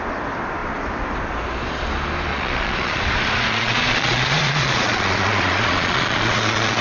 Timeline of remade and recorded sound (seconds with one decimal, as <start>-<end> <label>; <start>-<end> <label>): 0.0-2.3 recorded; 2.3-6.8 remade